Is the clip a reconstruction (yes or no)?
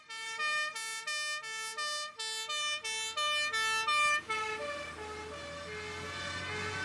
no